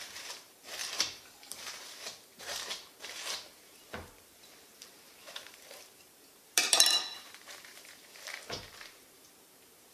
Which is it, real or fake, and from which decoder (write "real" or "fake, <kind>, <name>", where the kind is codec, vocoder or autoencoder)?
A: fake, vocoder, BigVGAN v2